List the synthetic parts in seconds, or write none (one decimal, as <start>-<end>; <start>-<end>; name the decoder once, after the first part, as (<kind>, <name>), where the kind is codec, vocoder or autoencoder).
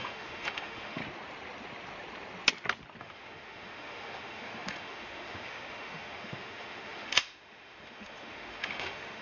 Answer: 0.0-1.0 (autoencoder, DAC-VAE); 3.0-9.2